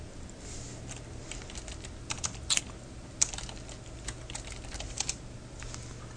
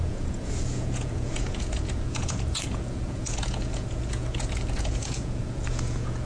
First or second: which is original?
first